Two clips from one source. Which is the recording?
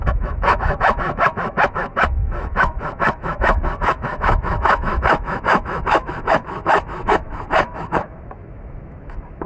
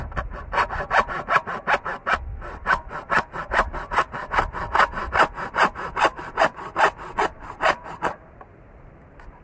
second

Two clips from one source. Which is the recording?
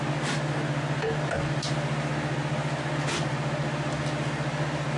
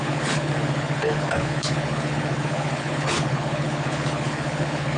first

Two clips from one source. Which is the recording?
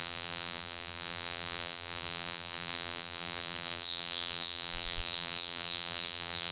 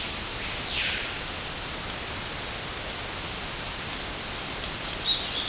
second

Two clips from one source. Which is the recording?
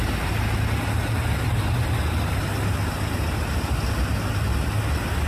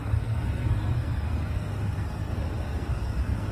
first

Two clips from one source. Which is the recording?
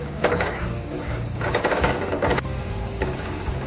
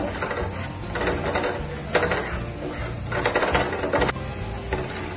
second